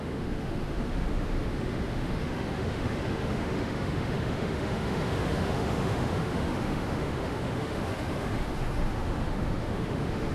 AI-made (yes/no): yes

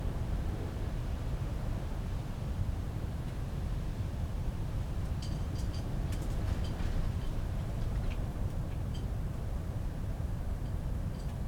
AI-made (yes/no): yes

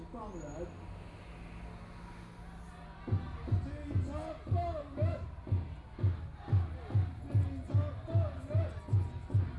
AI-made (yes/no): no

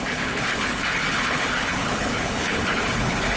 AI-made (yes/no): yes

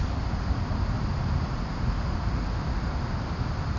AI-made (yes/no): no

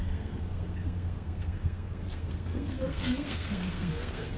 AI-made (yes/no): yes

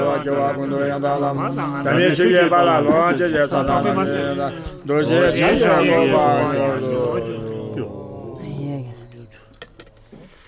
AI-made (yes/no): no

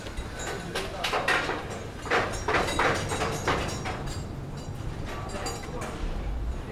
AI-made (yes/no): no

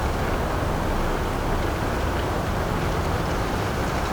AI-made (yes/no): no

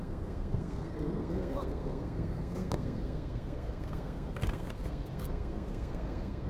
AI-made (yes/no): yes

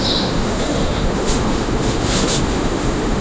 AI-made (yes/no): yes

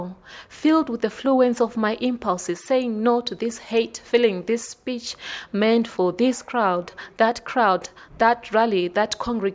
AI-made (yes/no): no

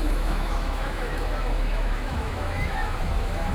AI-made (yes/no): yes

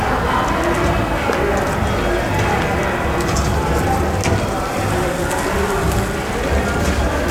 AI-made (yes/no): no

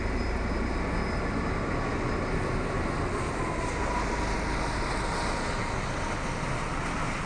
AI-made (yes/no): no